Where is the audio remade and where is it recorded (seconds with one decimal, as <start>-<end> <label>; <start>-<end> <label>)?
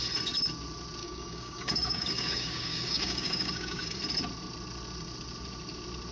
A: 0.0-1.0 recorded; 1.0-4.0 remade; 4.0-6.1 recorded